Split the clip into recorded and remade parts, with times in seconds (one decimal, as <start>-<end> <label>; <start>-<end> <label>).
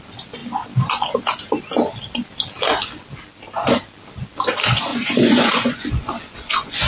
0.0-4.9 recorded; 4.9-6.9 remade